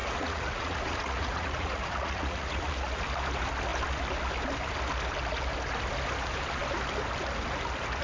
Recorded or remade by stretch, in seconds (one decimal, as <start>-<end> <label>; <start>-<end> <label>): 0.0-3.0 remade; 3.0-8.0 recorded